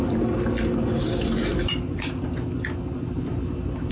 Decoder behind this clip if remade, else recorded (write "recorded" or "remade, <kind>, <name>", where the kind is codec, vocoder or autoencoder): recorded